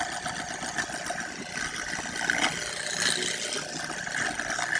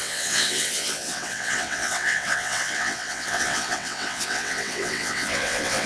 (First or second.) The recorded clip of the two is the first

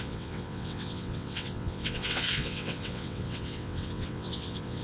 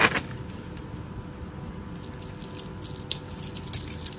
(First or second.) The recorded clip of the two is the second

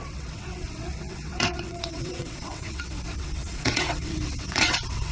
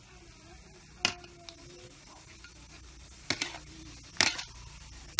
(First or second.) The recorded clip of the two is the second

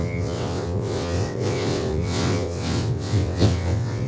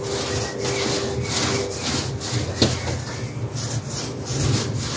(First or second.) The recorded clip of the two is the second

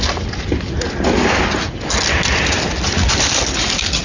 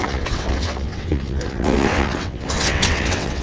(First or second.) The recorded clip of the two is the first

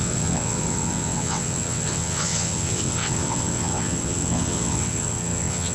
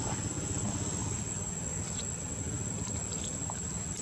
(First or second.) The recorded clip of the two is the second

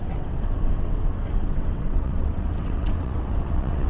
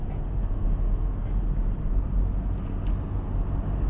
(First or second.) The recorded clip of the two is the second